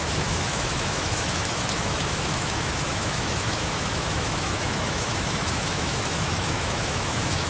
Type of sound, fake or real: fake